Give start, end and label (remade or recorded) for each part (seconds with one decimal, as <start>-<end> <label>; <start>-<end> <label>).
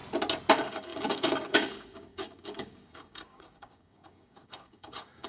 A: 0.0-0.5 recorded; 0.5-5.3 remade